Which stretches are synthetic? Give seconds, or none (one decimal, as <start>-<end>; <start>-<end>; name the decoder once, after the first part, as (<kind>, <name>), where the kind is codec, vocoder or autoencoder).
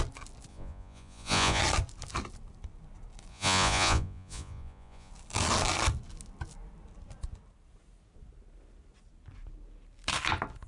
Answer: 0.5-1.6 (vocoder, Vocos); 3.3-5.1